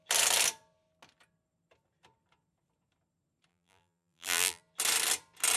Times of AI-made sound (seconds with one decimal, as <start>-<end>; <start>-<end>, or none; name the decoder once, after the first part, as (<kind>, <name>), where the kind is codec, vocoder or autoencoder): 3.5-4.6 (vocoder, BigVGAN v2)